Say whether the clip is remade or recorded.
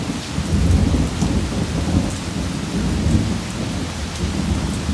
recorded